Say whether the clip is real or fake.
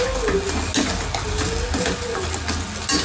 real